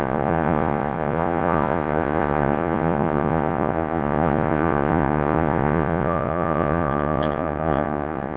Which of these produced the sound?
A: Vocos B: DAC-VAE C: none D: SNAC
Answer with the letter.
A